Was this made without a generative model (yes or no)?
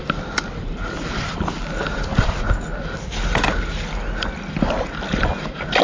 yes